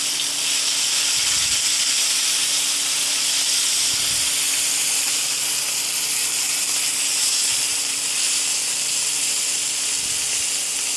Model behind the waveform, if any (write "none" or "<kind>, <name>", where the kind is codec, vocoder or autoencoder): none